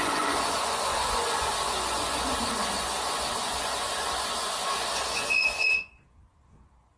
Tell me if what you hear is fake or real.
fake